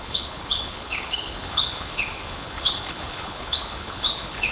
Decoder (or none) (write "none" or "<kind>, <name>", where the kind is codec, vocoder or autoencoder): codec, HILCodec